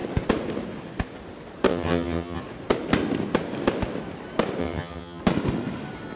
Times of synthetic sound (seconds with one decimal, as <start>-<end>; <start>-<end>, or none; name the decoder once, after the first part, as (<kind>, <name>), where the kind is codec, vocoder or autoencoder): 1.7-2.4 (vocoder, HiFi-GAN); 4.6-5.2